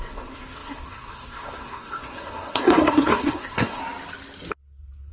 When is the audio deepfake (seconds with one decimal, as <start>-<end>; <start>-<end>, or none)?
0.0-3.8